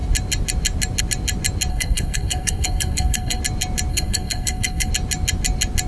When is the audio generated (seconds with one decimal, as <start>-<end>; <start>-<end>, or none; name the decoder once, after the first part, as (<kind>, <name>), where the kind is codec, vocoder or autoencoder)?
1.7-3.4 (codec, SNAC); 3.9-4.9

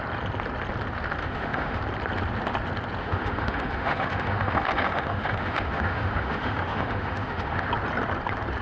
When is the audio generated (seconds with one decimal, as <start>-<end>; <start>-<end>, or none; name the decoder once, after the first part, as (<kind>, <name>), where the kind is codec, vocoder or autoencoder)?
1.2-1.8 (autoencoder, DAC-VAE); 3.0-7.7

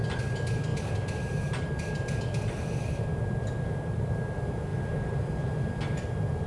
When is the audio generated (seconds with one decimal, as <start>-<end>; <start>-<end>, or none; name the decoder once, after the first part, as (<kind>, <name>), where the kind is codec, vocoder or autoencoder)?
0.7-4.0 (vocoder, BigVGAN v2); 4.7-5.4

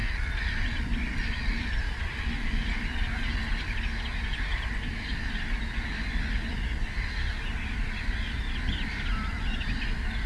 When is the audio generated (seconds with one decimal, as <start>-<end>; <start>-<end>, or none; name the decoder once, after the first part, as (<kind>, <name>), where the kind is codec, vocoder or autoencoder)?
0.0-3.7 (vocoder, BigVGAN v2)

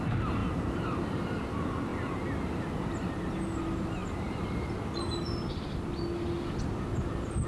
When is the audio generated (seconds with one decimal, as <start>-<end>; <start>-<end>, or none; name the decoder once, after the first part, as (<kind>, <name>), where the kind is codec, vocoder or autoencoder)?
0.4-1.0 (vocoder, BigVGAN v2); 1.9-3.2; 4.0-5.0

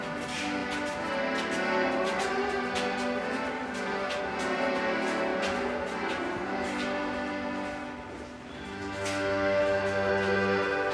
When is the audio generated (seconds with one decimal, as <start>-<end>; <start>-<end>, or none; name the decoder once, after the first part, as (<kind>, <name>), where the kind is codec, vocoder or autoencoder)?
none